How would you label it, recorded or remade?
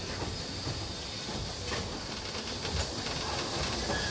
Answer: recorded